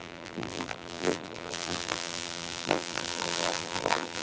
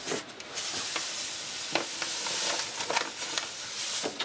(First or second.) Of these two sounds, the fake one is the first